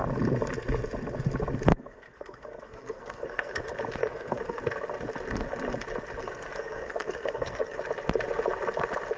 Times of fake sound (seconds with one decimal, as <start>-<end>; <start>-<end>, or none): 1.7-3.6; 4.0-4.6; 6.2-7.8